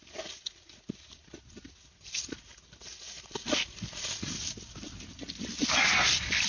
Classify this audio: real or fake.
real